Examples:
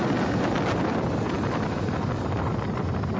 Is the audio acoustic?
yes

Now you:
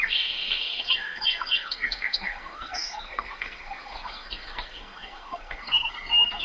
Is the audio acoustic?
no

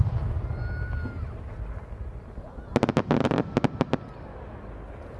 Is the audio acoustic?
yes